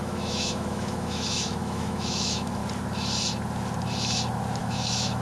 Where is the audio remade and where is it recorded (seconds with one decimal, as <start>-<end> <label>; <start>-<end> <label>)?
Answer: 0.0-2.6 remade; 2.6-4.6 recorded; 4.6-5.2 remade